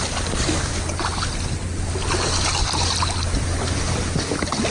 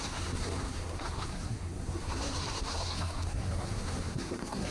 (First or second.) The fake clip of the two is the second